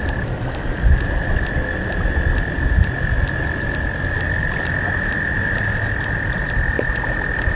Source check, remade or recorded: recorded